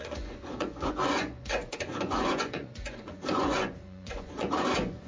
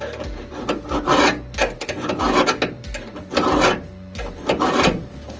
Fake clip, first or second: first